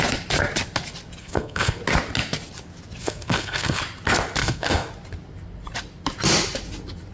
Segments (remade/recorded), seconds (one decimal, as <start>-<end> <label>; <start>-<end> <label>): 0.0-1.2 recorded; 1.2-1.8 remade; 1.8-3.0 recorded; 3.0-3.8 remade; 3.8-4.4 recorded; 4.4-4.9 remade; 4.9-7.1 recorded